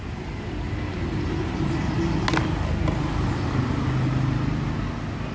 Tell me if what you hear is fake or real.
real